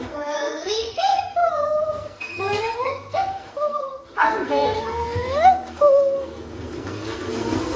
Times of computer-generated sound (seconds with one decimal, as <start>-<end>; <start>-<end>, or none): 0.0-7.8